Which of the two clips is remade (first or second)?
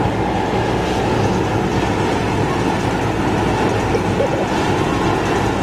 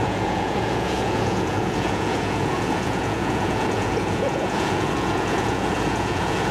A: second